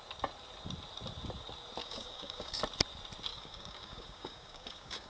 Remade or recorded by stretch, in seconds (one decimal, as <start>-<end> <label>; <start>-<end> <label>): 0.0-1.8 recorded; 1.8-2.6 remade; 2.6-3.3 recorded; 3.3-5.1 remade